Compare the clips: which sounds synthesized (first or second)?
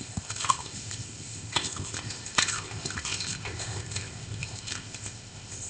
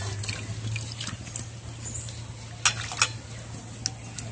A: first